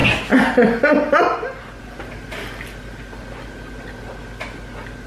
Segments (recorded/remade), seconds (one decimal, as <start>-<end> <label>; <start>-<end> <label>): 0.0-5.1 recorded